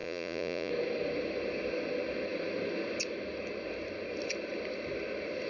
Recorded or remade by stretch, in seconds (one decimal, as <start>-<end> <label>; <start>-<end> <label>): 0.0-0.7 remade; 0.7-5.5 recorded